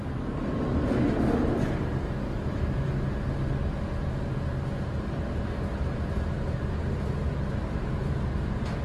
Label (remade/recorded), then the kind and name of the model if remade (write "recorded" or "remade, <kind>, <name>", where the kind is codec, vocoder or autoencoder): recorded